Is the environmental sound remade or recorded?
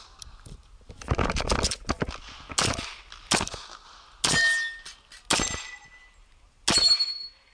recorded